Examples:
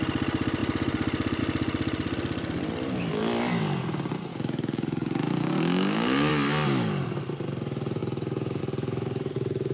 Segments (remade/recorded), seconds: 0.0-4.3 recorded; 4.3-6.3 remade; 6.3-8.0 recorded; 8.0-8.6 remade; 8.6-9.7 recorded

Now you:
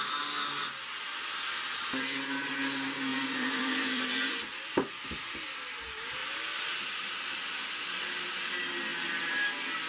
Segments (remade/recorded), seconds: 0.0-3.1 recorded; 3.1-5.8 remade; 5.8-6.2 recorded; 6.2-7.1 remade; 7.1-9.9 recorded

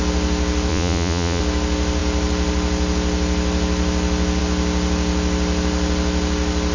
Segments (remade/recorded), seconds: 0.0-0.7 recorded; 0.7-1.4 remade; 1.4-6.7 recorded

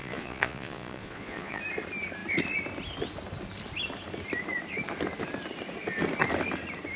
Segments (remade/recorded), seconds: 0.0-1.6 remade; 1.6-7.0 recorded

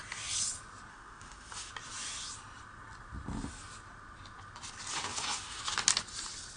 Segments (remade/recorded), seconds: 0.0-0.9 recorded; 0.9-1.7 remade; 1.7-4.9 recorded; 4.9-5.6 remade; 5.6-6.6 recorded

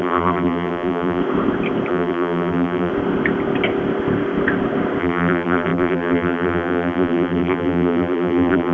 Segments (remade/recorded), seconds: 0.0-1.2 remade; 1.2-1.9 recorded; 1.9-2.9 remade; 2.9-5.0 recorded; 5.0-8.7 remade